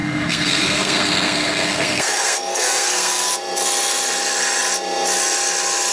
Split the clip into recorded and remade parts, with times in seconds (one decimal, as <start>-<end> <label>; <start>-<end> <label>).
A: 0.0-3.3 remade; 3.3-5.9 recorded